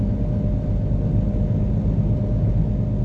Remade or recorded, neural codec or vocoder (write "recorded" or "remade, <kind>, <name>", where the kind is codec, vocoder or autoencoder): recorded